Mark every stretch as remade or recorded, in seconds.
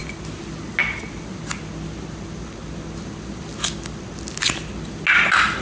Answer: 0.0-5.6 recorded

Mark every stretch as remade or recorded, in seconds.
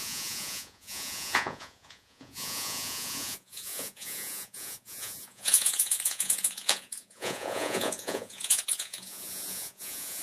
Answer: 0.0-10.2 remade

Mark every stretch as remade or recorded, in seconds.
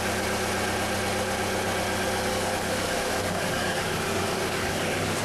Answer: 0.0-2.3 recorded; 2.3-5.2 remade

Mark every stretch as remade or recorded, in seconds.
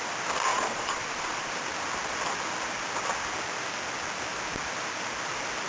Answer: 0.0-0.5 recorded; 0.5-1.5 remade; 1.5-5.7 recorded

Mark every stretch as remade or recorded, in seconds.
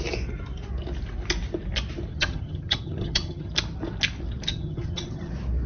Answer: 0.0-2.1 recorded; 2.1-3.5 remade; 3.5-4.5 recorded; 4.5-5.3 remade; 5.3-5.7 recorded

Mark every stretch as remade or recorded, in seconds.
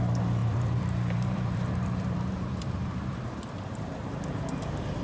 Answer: 0.0-0.4 recorded; 0.4-3.4 remade; 3.4-4.0 recorded; 4.0-4.6 remade; 4.6-5.0 recorded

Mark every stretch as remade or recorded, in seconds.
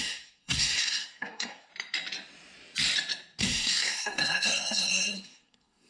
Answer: 0.0-1.7 remade; 1.7-3.4 recorded; 3.4-5.9 remade